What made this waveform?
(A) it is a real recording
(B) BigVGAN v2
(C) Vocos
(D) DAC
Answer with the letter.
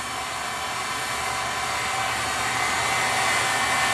A